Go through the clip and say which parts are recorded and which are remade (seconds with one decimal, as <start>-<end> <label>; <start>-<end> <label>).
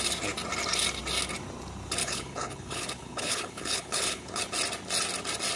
0.0-2.0 recorded; 2.0-4.4 remade; 4.4-5.6 recorded